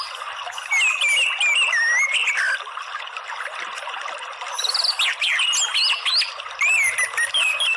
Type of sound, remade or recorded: recorded